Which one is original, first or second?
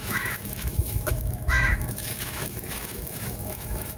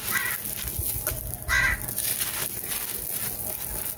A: second